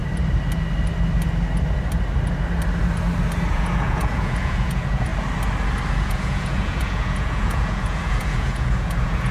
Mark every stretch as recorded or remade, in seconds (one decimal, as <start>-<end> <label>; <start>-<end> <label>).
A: 0.0-3.5 recorded; 3.5-5.1 remade; 5.1-5.9 recorded; 5.9-9.3 remade